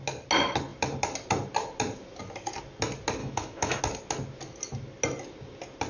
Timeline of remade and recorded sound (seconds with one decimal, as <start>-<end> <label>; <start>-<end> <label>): 0.0-3.2 recorded; 3.2-3.8 remade; 3.8-5.9 recorded